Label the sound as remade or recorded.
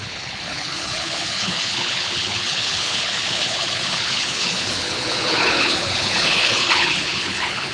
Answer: remade